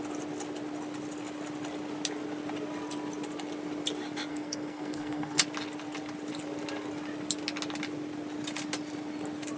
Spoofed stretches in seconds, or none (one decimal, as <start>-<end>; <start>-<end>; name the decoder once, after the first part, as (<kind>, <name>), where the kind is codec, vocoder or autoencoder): 4.3-5.4 (codec, SNAC)